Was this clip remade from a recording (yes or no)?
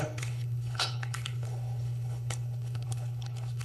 yes